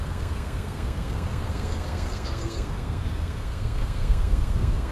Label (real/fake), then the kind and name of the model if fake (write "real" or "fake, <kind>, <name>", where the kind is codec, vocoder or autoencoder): fake, codec, SNAC